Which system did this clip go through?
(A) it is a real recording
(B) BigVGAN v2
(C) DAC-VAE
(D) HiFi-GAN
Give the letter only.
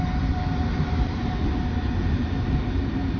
A